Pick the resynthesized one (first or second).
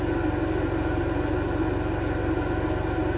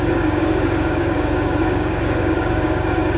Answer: second